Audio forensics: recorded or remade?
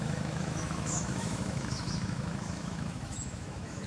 remade